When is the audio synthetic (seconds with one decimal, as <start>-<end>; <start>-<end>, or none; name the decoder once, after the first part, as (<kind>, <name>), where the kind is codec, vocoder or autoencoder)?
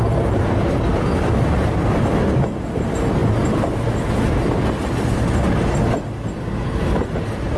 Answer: none